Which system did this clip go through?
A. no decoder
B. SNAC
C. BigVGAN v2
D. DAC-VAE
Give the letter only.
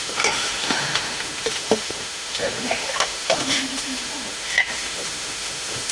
D